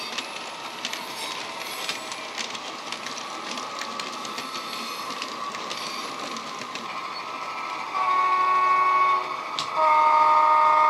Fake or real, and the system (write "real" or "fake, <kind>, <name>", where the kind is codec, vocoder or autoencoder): real